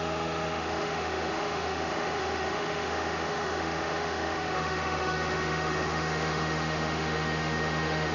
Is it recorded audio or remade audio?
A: remade